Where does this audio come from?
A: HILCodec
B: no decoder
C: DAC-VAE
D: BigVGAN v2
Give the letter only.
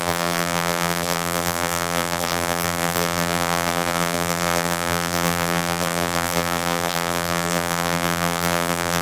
D